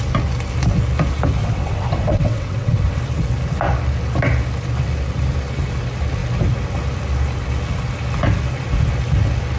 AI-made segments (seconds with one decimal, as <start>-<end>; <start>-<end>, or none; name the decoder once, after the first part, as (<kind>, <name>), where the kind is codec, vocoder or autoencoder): 1.4-3.0 (vocoder, WaveNeXt)